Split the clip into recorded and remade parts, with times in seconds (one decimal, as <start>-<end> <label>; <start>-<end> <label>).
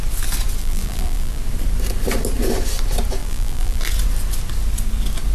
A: 0.0-0.6 recorded; 0.6-1.4 remade; 1.4-3.2 recorded; 3.2-3.9 remade; 3.9-5.3 recorded